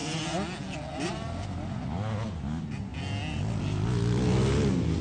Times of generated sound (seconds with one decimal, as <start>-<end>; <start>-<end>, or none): none